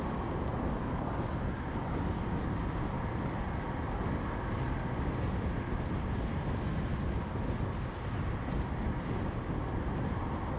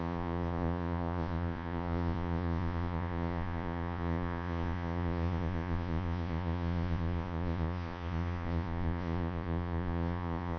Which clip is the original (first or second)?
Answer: first